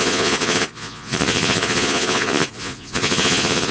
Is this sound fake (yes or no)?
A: yes